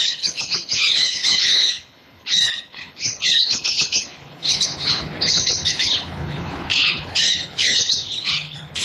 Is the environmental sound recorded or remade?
remade